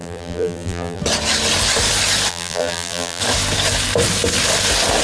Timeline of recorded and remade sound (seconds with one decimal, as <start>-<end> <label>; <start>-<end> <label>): 0.0-1.0 remade; 1.0-2.3 recorded; 2.3-3.2 remade; 3.2-5.0 recorded